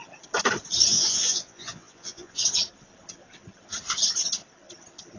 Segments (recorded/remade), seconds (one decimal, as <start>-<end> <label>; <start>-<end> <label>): 0.0-0.9 recorded; 0.9-2.4 remade; 2.4-5.2 recorded